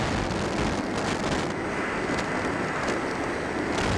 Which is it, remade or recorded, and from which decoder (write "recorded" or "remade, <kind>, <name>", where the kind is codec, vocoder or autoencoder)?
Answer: recorded